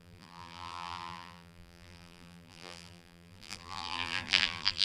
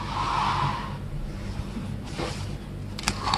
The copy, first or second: first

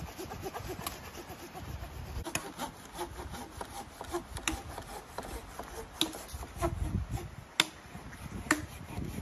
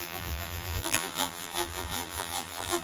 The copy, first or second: second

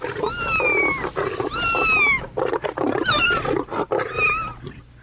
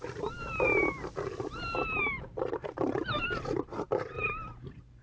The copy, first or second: second